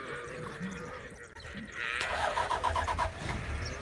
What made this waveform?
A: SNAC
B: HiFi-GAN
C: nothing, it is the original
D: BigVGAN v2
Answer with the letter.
D